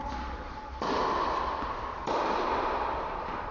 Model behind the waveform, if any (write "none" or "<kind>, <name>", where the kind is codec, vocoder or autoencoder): none